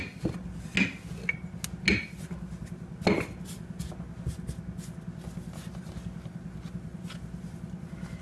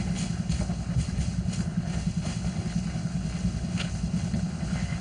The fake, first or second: second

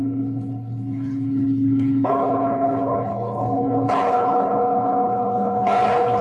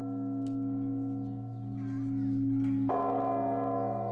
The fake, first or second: first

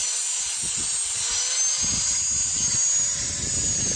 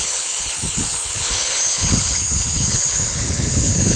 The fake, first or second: second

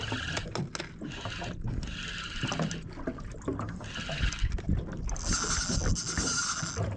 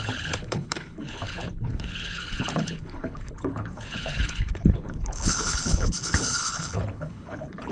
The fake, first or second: second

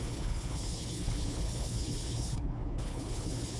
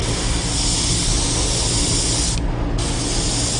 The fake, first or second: first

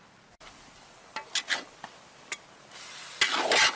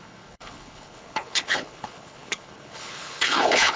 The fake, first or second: second